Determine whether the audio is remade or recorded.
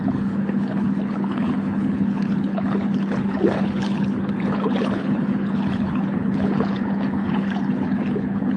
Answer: remade